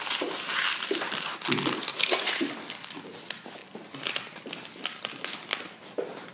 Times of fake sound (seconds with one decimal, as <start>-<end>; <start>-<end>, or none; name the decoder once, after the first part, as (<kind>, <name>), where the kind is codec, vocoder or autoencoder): 1.9-2.4 (vocoder, Vocos)